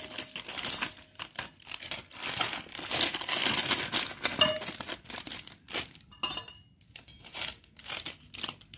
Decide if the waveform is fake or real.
real